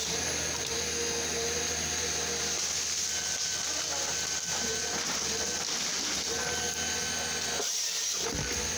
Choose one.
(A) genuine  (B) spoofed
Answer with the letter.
A